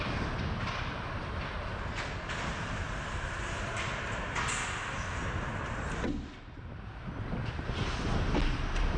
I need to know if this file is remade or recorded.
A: recorded